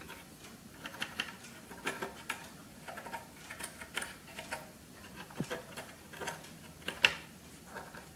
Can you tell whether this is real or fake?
real